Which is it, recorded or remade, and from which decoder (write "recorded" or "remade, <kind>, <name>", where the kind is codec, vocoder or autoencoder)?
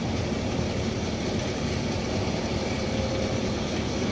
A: recorded